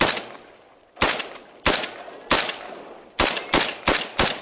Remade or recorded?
recorded